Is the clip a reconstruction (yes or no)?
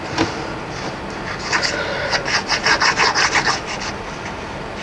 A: no